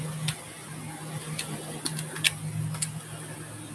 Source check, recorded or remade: recorded